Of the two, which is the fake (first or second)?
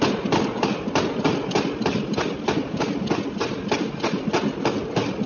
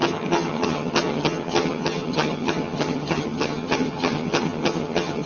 second